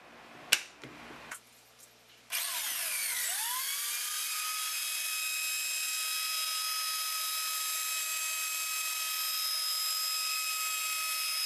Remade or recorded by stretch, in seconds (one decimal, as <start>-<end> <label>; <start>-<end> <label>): 0.0-11.5 recorded